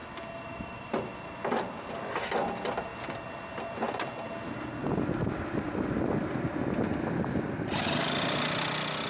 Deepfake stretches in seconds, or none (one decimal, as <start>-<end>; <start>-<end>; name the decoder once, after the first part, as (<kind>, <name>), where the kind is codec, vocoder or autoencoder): none